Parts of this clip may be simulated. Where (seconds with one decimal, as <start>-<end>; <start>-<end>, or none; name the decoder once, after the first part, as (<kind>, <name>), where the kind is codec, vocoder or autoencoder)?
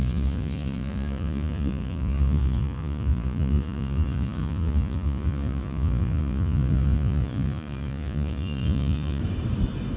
0.0-9.2 (vocoder, Vocos)